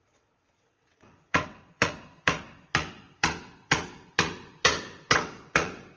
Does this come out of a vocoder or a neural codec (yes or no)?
yes